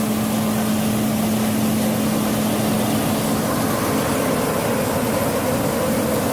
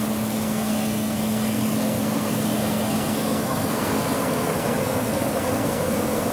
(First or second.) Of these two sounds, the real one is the first